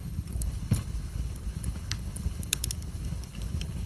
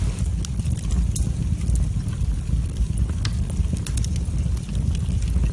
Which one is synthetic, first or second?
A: first